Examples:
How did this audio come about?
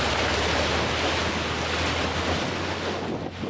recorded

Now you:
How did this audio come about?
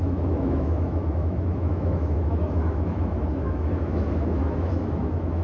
remade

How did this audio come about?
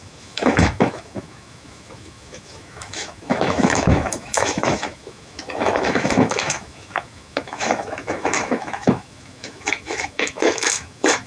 remade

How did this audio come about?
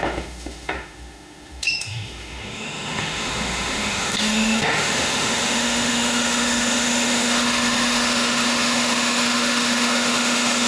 remade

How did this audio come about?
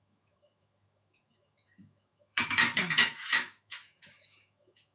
remade